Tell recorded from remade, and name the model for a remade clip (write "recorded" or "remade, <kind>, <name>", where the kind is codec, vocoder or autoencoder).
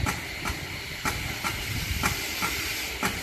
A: recorded